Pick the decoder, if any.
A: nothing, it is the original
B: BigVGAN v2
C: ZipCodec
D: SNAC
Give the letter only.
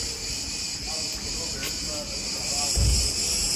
A